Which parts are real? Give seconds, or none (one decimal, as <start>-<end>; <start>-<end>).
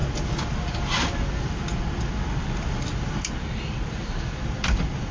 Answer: 0.0-5.1